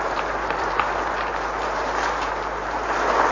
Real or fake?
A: fake